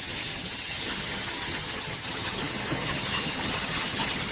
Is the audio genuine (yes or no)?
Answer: no